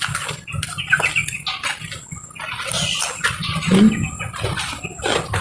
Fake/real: real